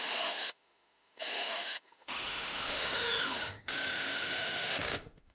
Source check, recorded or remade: remade